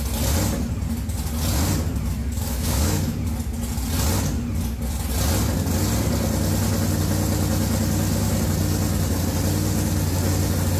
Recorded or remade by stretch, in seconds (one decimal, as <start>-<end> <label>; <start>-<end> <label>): 0.0-2.2 recorded; 2.2-3.1 remade; 3.1-10.8 recorded